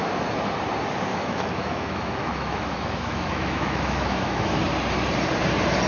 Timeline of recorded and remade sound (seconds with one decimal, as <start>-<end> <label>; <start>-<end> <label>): 0.0-1.1 recorded; 1.1-4.6 remade; 4.6-5.9 recorded